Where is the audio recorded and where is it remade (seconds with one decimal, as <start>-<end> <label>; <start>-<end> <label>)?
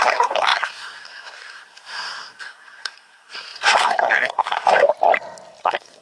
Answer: 0.0-4.9 remade; 4.9-5.6 recorded; 5.6-6.0 remade